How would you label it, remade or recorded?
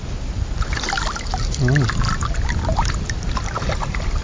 recorded